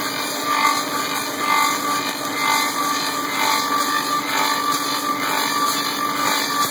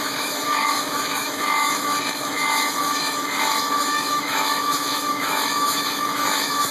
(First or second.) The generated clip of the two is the second